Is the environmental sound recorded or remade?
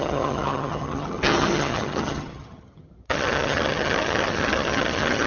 remade